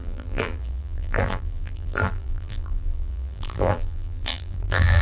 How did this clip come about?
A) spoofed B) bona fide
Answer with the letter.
A